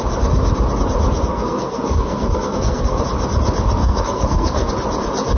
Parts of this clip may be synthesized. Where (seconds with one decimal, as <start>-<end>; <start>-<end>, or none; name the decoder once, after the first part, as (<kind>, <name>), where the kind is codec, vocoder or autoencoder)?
1.3-3.0 (codec, SNAC); 3.8-4.7